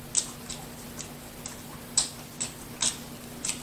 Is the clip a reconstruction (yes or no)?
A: no